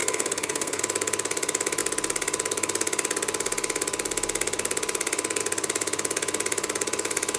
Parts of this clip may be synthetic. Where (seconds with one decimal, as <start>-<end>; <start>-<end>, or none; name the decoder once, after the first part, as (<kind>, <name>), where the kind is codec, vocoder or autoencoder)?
0.0-0.8 (codec, SNAC)